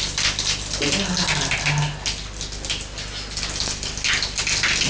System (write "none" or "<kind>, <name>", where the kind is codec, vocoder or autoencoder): none